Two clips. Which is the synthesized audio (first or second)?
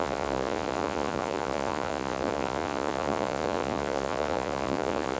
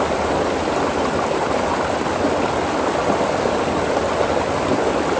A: first